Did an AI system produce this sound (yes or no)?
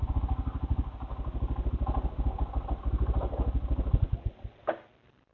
no